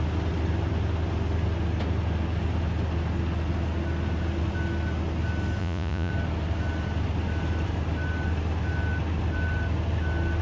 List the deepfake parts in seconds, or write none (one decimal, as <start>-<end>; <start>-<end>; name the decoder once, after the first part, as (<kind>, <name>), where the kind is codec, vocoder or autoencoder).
5.6-6.1 (vocoder, Vocos)